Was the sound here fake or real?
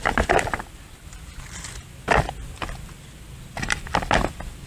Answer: real